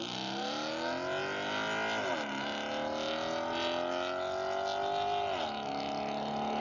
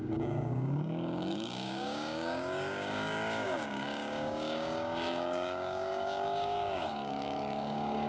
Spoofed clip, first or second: second